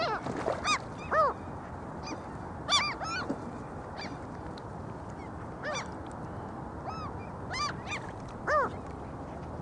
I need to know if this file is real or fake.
real